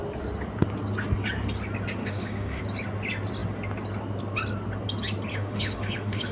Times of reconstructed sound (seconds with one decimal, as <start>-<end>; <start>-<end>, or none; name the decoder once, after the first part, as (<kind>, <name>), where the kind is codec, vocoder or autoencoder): 2.0-2.6 (autoencoder, DAC-VAE); 5.3-6.3